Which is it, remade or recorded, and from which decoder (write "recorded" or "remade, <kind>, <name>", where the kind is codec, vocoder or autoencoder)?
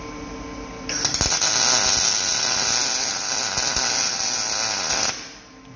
recorded